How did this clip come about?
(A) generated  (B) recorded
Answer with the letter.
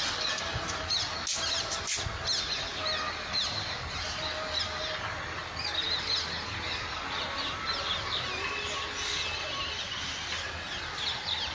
B